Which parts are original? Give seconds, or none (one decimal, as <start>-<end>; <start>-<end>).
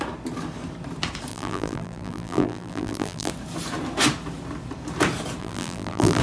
0.0-1.3; 3.3-5.4